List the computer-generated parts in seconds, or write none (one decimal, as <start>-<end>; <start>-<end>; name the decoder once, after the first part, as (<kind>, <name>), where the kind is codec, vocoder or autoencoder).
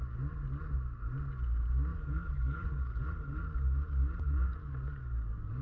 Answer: 1.9-3.0 (codec, DAC); 4.6-5.6